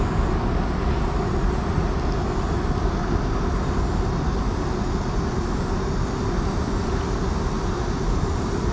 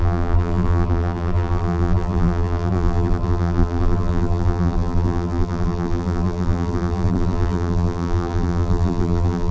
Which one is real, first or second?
first